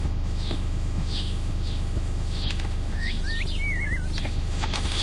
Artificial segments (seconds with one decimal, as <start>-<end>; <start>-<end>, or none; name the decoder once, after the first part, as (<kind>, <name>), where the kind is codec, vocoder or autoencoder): 0.0-3.2 (autoencoder, DAC-VAE); 4.2-5.0